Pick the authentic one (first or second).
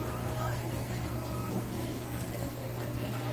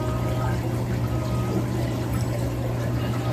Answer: second